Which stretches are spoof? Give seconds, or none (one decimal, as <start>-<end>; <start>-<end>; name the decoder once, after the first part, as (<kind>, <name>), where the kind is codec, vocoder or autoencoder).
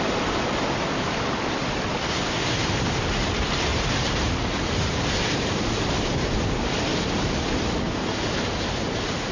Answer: 2.2-3.1 (vocoder, BigVGAN v2); 3.7-7.8